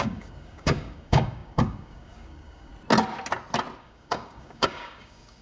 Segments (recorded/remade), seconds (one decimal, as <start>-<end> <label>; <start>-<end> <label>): 0.0-2.7 remade; 2.7-3.8 recorded; 3.8-5.4 remade